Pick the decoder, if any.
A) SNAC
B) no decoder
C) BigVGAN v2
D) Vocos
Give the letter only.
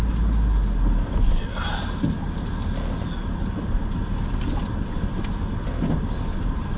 B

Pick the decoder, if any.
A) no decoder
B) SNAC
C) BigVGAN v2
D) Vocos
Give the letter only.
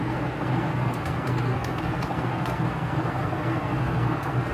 B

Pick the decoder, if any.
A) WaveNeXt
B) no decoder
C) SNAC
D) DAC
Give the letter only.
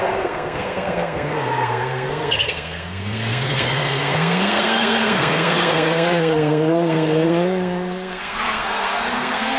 C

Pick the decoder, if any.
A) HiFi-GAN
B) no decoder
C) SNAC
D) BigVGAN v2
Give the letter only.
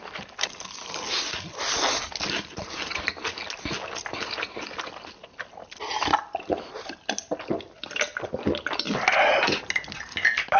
B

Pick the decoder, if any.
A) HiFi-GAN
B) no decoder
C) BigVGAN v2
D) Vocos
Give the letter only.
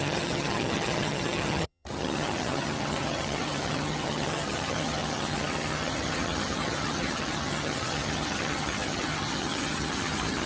A